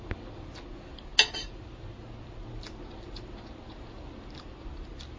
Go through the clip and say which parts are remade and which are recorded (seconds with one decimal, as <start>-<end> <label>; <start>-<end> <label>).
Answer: 0.0-5.2 recorded